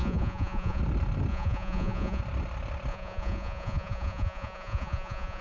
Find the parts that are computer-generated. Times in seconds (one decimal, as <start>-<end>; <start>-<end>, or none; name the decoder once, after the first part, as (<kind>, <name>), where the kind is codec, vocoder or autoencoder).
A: 0.0-0.8 (vocoder, Vocos); 1.3-2.2; 2.9-5.4